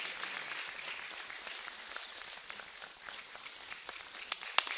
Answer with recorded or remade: recorded